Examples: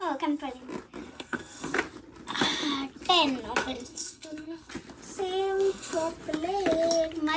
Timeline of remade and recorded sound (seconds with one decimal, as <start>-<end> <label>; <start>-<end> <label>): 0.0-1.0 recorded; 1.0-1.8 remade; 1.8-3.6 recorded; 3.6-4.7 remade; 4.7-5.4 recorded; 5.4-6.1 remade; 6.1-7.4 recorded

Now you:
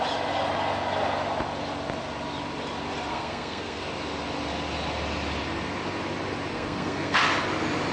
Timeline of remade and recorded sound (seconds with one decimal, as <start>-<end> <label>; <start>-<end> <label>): 0.0-3.1 recorded; 3.1-3.8 remade; 3.8-6.5 recorded; 6.5-7.2 remade; 7.2-7.9 recorded

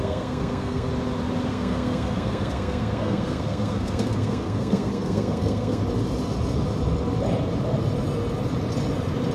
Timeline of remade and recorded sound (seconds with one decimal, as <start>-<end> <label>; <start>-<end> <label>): 0.0-0.9 remade; 0.9-1.5 recorded; 1.5-5.8 remade; 5.8-9.3 recorded

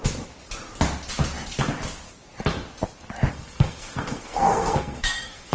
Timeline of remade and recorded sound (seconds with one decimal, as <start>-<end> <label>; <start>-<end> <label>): 0.0-3.3 recorded; 3.3-5.5 remade

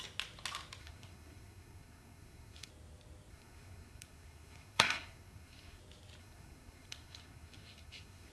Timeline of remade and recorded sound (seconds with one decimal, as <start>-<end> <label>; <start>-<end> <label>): 0.0-0.8 recorded; 0.8-2.7 remade; 2.7-3.3 recorded; 3.3-5.8 remade; 5.8-6.2 recorded; 6.2-8.3 remade

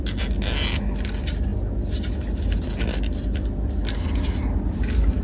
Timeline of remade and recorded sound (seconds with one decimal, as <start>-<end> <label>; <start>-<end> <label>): 0.0-5.2 recorded

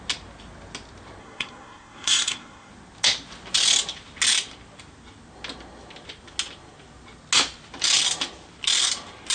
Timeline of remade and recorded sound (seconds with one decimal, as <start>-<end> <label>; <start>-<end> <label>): 0.0-1.2 recorded; 1.2-2.7 remade; 2.7-9.3 recorded

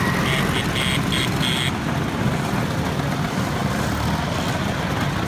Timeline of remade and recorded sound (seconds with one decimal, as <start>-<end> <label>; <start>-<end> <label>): 0.0-5.3 recorded